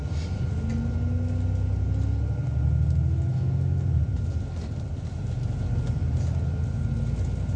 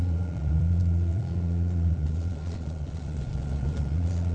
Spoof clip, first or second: second